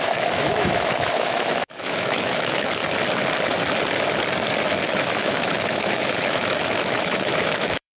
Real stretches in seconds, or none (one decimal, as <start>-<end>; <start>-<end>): 2.8-4.7